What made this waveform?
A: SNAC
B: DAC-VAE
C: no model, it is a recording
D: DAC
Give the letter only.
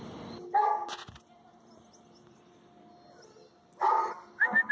C